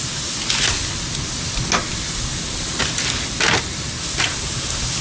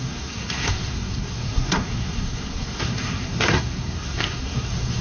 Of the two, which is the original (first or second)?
first